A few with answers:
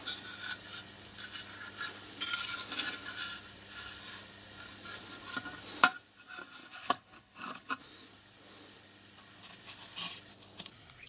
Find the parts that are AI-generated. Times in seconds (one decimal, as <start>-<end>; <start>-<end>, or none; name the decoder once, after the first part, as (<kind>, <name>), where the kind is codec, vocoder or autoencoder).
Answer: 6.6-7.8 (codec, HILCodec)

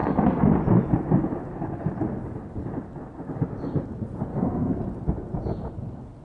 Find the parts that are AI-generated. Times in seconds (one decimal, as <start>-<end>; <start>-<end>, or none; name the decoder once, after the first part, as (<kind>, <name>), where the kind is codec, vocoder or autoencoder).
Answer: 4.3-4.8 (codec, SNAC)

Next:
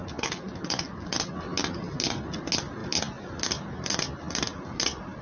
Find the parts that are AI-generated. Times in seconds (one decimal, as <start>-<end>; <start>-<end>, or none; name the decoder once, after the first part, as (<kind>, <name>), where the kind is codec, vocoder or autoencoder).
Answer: none

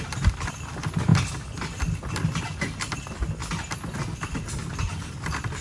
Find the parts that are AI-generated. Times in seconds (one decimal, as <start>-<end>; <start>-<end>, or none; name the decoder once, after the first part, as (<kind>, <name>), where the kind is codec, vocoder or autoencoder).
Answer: none

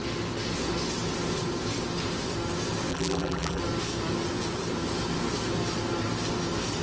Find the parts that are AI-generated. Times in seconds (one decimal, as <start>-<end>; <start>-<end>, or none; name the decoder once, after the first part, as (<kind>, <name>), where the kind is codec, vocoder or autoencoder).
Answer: 2.9-3.6 (vocoder, BigVGAN v2)